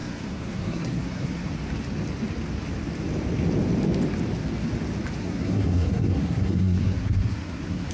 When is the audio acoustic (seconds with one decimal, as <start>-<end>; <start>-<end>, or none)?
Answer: 1.5-5.2